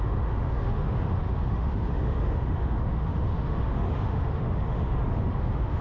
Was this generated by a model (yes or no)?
yes